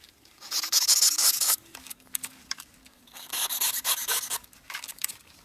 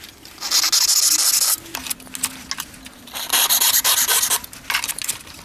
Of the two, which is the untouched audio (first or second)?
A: second